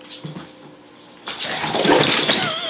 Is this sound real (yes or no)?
yes